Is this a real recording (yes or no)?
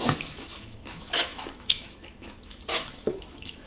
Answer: no